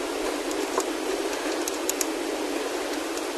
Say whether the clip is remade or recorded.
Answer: remade